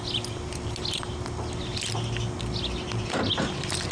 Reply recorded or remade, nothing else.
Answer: recorded